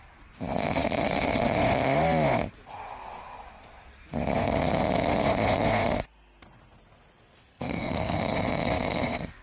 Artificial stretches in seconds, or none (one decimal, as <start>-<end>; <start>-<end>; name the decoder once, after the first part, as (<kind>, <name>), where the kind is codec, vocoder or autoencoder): 7.5-8.2 (codec, SNAC)